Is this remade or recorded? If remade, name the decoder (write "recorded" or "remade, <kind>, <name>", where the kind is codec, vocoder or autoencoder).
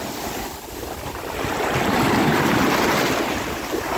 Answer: recorded